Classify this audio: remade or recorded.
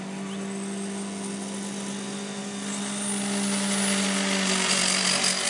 recorded